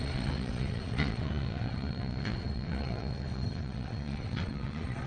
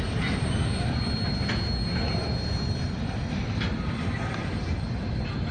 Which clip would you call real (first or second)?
second